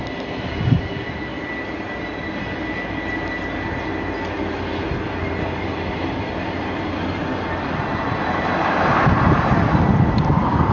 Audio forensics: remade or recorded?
recorded